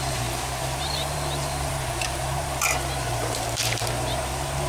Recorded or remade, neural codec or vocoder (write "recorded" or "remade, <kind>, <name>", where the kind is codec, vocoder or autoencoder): remade, vocoder, BigVGAN v2